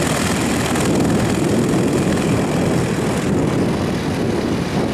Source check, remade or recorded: recorded